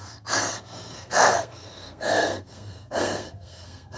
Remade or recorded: remade